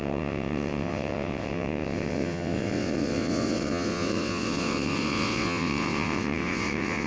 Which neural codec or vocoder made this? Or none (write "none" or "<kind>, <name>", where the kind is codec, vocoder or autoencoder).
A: vocoder, WaveNeXt